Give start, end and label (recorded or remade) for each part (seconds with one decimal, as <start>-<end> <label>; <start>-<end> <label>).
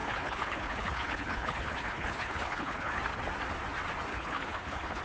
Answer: 0.0-3.0 remade; 3.0-4.1 recorded; 4.1-5.0 remade